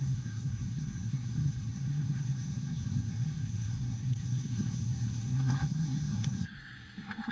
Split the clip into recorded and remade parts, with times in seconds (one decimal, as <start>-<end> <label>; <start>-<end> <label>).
0.0-7.3 remade